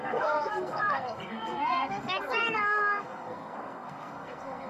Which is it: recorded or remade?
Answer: remade